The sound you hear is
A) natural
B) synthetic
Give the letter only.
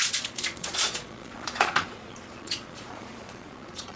B